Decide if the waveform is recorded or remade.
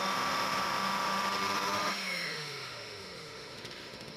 remade